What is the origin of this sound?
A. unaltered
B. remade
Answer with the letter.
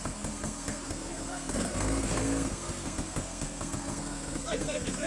B